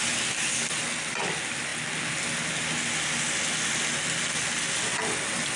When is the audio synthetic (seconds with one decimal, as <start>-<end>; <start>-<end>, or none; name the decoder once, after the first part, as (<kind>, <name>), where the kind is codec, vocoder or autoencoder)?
none

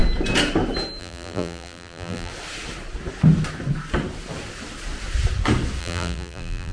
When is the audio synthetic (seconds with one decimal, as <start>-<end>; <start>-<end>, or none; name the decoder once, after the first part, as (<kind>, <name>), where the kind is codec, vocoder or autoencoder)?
1.0-2.3 (vocoder, BigVGAN v2); 5.8-6.7